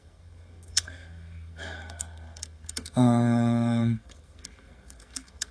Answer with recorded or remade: remade